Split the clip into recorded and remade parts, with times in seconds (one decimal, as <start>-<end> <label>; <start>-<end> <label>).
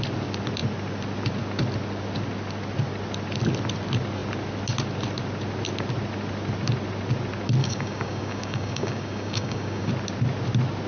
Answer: 0.0-7.6 recorded; 7.6-9.9 remade; 9.9-10.9 recorded